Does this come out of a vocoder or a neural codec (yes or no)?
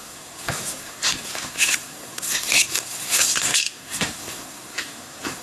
yes